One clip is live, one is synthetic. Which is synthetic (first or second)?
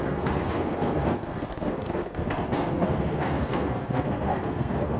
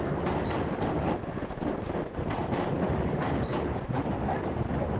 first